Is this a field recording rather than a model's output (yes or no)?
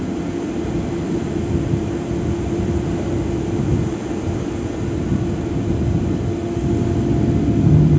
yes